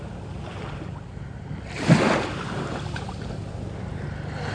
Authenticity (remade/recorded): recorded